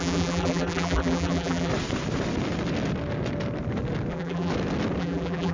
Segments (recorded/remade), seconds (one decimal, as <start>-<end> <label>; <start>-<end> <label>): 0.0-1.7 remade; 1.7-4.1 recorded; 4.1-4.5 remade; 4.5-5.0 recorded; 5.0-5.5 remade